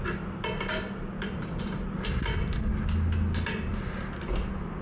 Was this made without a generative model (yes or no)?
yes